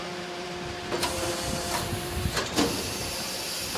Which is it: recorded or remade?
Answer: remade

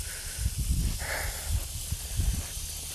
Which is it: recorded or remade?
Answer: recorded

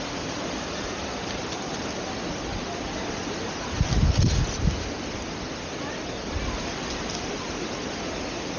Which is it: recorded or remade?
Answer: recorded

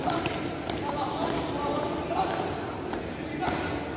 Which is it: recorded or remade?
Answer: recorded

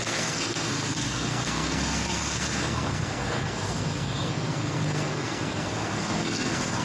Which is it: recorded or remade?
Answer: remade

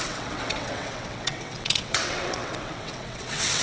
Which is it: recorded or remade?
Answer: remade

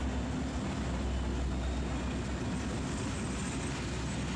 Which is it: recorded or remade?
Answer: recorded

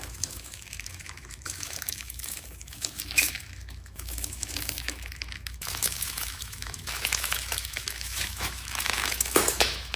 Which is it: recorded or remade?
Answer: remade